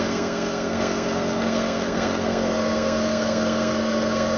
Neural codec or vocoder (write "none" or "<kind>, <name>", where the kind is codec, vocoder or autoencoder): codec, SNAC